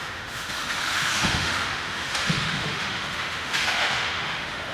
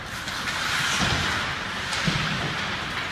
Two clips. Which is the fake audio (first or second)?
first